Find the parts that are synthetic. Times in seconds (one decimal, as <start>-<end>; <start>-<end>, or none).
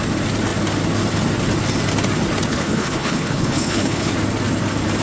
2.5-4.1